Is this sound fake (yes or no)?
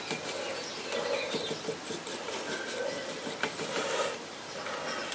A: no